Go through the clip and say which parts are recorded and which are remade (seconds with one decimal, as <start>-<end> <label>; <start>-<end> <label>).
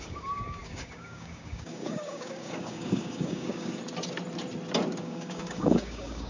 0.0-3.8 remade; 3.8-5.0 recorded; 5.0-6.3 remade